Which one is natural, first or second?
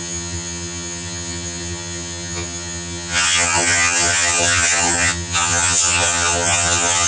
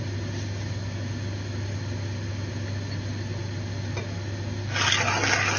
second